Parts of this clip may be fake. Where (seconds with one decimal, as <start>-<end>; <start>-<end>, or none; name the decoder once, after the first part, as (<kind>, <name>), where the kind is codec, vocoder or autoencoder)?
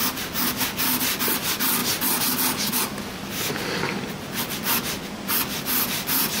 0.0-1.8 (vocoder, BigVGAN v2); 5.6-6.4